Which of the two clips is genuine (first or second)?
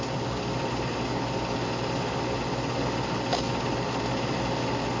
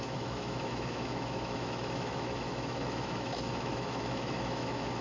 first